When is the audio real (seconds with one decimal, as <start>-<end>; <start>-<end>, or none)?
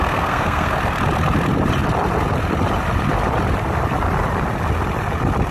0.7-5.5